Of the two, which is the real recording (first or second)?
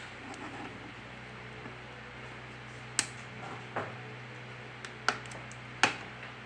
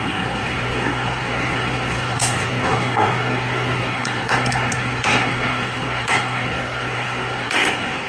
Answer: first